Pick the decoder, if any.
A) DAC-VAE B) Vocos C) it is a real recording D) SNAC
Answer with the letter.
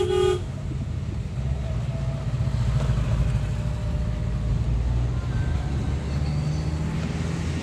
C